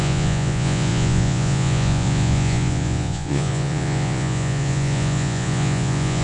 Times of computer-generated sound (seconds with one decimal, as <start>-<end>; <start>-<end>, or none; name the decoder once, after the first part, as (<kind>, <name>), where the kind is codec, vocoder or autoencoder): 0.0-6.2 (vocoder, Vocos)